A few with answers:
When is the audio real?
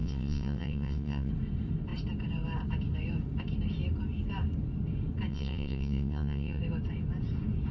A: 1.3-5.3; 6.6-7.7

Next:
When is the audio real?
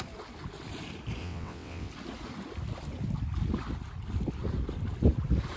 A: 0.0-1.2; 1.9-5.6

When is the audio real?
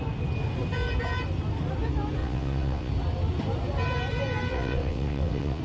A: 0.0-2.2; 2.9-4.5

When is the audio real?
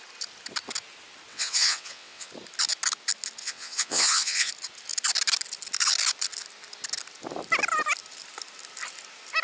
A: 0.0-1.3; 2.3-3.4; 4.5-9.4